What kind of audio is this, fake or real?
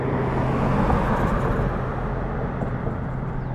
real